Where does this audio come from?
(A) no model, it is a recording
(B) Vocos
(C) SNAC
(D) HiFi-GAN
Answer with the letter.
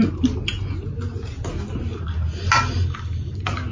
A